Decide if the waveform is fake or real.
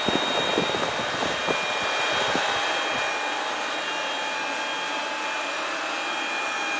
real